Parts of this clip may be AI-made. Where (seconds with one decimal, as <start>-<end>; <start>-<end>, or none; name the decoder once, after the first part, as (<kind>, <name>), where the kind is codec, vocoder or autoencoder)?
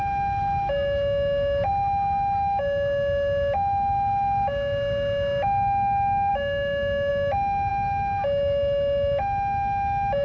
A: none